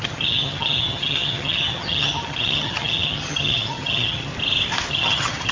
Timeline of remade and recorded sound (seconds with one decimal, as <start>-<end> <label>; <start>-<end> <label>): 0.0-4.3 remade; 4.3-4.9 recorded; 4.9-5.5 remade